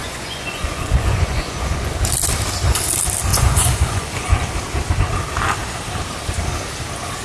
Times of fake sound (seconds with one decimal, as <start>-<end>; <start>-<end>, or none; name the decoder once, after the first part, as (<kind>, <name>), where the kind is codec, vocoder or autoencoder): 0.0-1.9 (vocoder, Vocos); 3.3-4.5